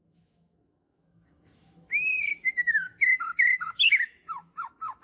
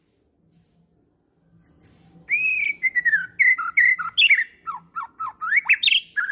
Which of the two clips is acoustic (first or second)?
second